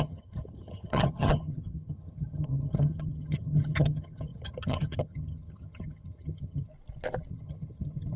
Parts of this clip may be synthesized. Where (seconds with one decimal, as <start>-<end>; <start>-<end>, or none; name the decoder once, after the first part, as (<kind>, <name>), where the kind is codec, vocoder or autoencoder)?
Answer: 0.0-6.7 (vocoder, HiFi-GAN); 7.3-8.2